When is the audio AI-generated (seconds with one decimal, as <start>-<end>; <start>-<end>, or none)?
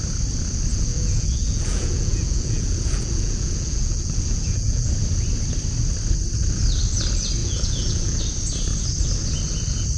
0.7-4.9; 7.4-8.2